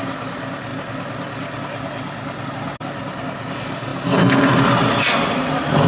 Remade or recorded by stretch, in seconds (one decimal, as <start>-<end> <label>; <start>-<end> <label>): 0.0-5.9 recorded